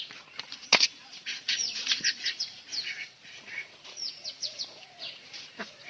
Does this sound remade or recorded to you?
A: remade